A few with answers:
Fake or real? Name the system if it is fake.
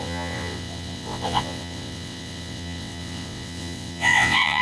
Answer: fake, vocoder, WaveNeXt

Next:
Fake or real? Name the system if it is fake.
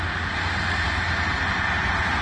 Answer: real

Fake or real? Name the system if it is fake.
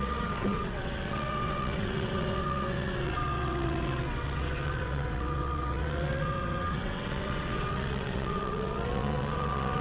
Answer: fake, vocoder, WaveNeXt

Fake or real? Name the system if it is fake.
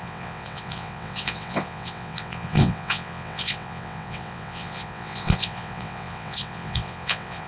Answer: fake, vocoder, WaveNeXt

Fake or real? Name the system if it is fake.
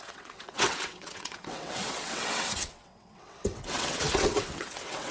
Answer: fake, vocoder, WaveNeXt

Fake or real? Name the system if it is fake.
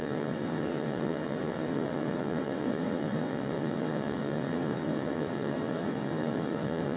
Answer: fake, vocoder, WaveNeXt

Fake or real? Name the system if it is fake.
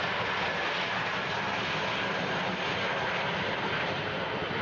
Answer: real